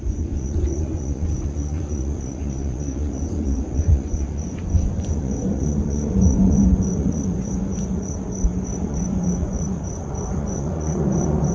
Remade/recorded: remade